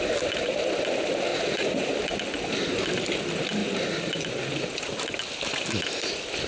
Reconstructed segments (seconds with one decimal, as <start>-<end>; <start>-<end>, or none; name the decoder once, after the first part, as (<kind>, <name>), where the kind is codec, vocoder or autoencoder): 1.3-1.9 (vocoder, Vocos)